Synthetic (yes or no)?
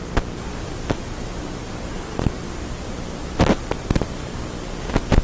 no